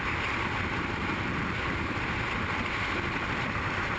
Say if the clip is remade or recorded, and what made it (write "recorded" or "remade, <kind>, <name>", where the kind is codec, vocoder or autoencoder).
recorded